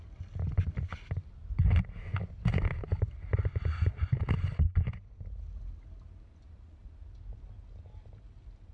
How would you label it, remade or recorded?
recorded